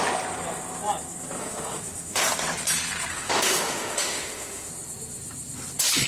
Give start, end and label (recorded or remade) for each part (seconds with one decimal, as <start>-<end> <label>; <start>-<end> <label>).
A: 0.0-1.4 recorded; 1.4-2.2 remade; 2.2-3.1 recorded; 3.1-4.7 remade; 4.7-6.1 recorded